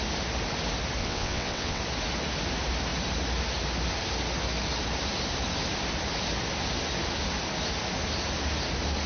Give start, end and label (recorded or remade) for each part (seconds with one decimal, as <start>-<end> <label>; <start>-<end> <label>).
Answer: 0.0-1.0 recorded; 1.0-1.8 remade; 1.8-9.1 recorded

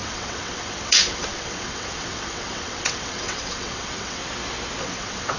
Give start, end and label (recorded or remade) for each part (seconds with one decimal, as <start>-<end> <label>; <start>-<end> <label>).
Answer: 0.0-4.2 remade; 4.2-4.8 recorded; 4.8-5.4 remade

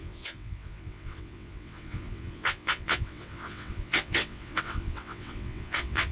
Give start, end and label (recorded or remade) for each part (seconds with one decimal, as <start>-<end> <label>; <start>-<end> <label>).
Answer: 0.0-6.1 remade

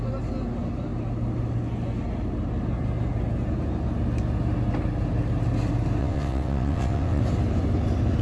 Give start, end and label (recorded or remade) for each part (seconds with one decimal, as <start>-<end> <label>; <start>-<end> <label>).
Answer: 0.0-6.0 recorded; 6.0-7.2 remade; 7.2-8.2 recorded

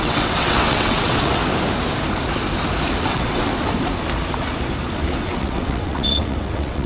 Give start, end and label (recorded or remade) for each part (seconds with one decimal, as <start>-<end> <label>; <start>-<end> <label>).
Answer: 0.0-1.4 remade; 1.4-3.1 recorded; 3.1-3.5 remade; 3.5-5.2 recorded; 5.2-6.9 remade

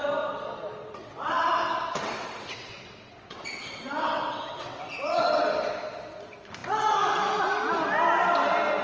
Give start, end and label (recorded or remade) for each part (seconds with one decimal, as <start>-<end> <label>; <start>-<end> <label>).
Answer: 0.0-1.0 recorded; 1.0-5.4 remade; 5.4-8.8 recorded

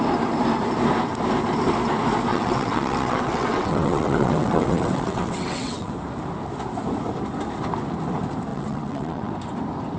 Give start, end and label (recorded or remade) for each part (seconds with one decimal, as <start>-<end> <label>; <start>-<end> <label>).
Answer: 0.0-2.3 recorded; 2.3-5.9 remade; 5.9-8.5 recorded; 8.5-9.3 remade; 9.3-10.0 recorded

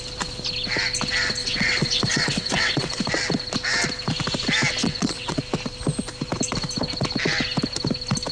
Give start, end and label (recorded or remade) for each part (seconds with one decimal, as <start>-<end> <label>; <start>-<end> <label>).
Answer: 0.0-1.4 recorded; 1.4-3.0 remade; 3.0-4.8 recorded; 4.8-5.4 remade; 5.4-8.3 recorded